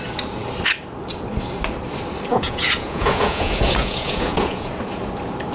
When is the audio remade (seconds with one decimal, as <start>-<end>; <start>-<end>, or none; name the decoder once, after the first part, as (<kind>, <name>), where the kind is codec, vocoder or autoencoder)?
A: 2.3-4.7 (vocoder, Vocos)